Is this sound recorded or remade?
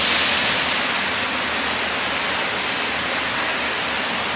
recorded